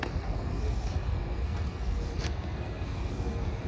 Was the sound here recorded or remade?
remade